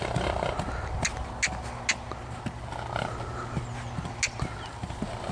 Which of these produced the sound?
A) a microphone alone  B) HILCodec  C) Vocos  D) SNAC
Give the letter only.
A